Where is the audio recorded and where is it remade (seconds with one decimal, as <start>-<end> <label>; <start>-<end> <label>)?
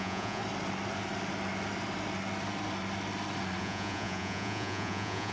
0.0-0.4 remade; 0.4-3.6 recorded; 3.6-5.3 remade